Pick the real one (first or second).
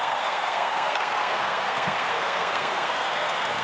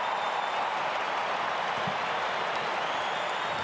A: second